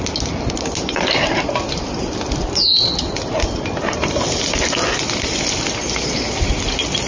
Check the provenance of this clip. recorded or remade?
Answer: recorded